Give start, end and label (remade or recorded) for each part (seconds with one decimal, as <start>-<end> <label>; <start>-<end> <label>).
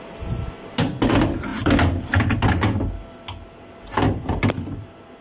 0.0-5.2 recorded